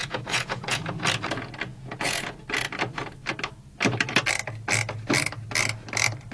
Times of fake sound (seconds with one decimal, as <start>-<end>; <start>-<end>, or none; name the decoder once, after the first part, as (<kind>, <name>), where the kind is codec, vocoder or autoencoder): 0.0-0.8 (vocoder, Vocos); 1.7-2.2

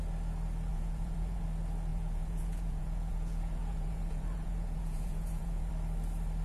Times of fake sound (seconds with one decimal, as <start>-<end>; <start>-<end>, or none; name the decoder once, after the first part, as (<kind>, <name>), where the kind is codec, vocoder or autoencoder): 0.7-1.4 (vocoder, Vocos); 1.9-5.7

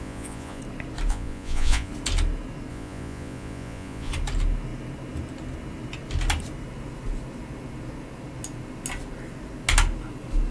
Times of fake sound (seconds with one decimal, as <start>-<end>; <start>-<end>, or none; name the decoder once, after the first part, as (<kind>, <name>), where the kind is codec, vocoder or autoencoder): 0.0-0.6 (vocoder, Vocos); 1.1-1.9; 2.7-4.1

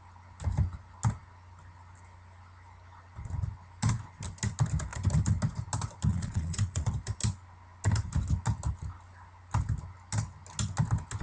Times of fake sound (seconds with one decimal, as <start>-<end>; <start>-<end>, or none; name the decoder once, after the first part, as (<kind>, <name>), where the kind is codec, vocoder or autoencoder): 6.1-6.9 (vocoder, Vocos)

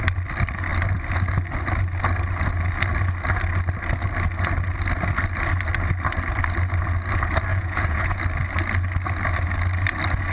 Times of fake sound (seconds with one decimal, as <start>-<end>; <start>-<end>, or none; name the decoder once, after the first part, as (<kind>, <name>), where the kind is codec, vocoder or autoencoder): 7.5-8.2 (vocoder, Vocos)

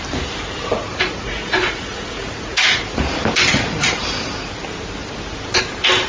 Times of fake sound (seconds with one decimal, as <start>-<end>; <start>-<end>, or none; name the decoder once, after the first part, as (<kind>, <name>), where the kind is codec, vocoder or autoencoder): 0.8-2.8 (vocoder, Vocos)

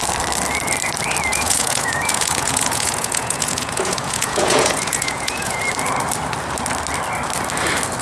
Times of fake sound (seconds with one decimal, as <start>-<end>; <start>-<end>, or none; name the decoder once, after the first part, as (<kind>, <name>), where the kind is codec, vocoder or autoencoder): 1.3-5.6 (vocoder, Vocos)

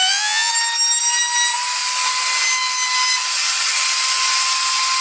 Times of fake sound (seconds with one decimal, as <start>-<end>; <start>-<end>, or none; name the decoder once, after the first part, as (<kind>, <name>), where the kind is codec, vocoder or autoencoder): 0.0-0.5 (vocoder, Vocos)